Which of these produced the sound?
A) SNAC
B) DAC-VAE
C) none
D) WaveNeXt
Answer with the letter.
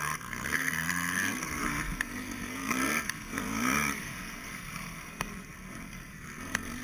A